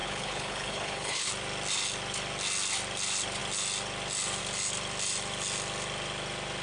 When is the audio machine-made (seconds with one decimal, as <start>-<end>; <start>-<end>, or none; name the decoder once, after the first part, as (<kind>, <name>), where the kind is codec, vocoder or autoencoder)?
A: 0.0-1.3 (codec, HILCodec)